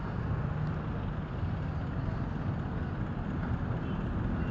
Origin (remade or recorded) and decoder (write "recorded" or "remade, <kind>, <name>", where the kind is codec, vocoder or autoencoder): recorded